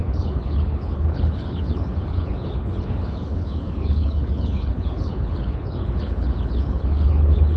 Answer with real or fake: fake